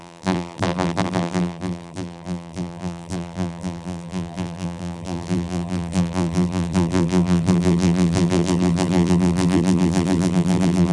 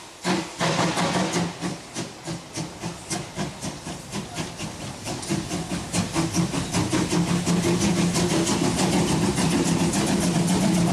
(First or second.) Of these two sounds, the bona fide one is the second